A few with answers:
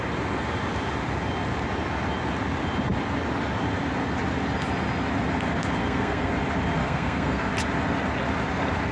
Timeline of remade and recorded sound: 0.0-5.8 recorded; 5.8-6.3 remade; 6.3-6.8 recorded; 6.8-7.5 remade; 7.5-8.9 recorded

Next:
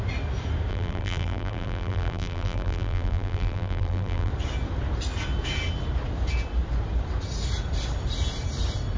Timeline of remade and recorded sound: 0.0-0.7 recorded; 0.7-4.3 remade; 4.3-9.0 recorded